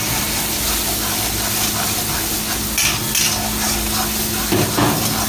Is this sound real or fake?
real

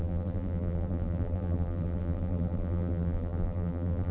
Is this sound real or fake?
fake